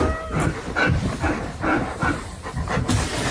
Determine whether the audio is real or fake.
real